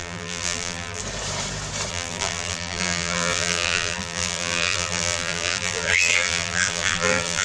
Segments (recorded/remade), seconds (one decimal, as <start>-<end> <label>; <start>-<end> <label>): 0.0-1.0 remade; 1.0-1.9 recorded; 1.9-7.4 remade